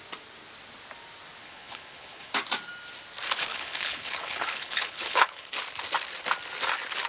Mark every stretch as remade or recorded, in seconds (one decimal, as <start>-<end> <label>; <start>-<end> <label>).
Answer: 0.0-1.4 recorded; 1.4-2.3 remade; 2.3-3.5 recorded; 3.5-5.5 remade; 5.5-7.1 recorded